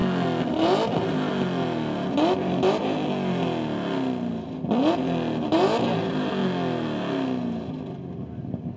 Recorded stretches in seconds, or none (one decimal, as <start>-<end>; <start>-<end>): 0.0-8.8